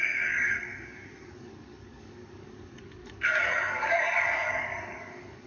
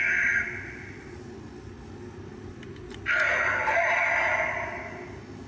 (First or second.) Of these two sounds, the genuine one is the second